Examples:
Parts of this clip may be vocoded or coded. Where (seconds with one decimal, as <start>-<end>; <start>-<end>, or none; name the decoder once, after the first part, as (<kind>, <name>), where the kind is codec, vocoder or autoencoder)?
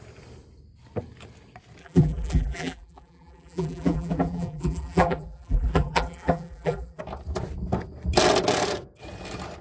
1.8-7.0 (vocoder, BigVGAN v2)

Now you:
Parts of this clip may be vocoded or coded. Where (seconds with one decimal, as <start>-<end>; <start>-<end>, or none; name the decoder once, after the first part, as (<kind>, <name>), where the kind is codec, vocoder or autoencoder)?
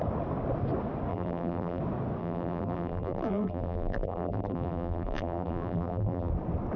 1.1-1.8 (vocoder, BigVGAN v2); 2.2-6.3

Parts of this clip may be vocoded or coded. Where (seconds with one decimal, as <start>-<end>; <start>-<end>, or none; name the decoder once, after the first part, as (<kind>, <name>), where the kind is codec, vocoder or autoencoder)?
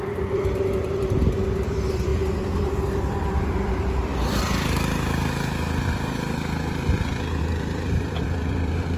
0.0-4.1 (vocoder, BigVGAN v2); 7.4-9.0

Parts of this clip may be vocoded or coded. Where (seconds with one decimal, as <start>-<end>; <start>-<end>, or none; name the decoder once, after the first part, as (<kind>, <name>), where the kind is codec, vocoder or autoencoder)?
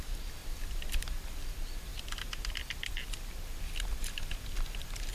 none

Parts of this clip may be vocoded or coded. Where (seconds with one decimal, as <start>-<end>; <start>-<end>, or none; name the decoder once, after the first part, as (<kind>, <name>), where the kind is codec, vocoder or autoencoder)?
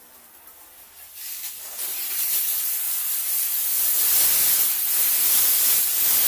1.9-3.1 (vocoder, BigVGAN v2)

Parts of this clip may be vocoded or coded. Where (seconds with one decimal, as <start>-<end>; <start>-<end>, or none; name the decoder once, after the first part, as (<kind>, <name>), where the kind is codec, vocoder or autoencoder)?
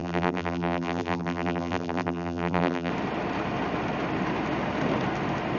0.0-2.9 (vocoder, BigVGAN v2)